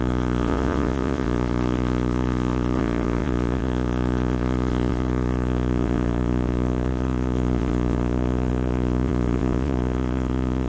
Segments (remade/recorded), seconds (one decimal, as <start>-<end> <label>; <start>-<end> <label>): 0.0-10.7 remade